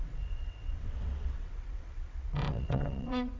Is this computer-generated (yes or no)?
yes